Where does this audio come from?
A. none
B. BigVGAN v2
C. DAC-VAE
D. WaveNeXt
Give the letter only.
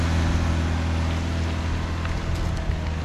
A